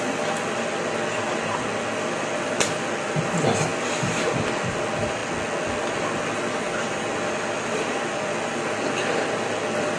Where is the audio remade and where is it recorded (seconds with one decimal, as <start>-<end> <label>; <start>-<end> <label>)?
0.0-10.0 recorded